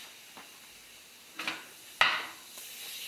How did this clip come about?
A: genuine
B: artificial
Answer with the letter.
A